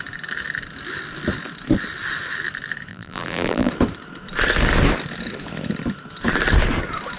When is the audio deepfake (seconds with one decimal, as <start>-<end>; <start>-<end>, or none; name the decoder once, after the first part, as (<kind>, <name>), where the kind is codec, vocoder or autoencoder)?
2.9-3.7 (vocoder, BigVGAN v2)